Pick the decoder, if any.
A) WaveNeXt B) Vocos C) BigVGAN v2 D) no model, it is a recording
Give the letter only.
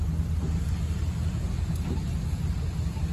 D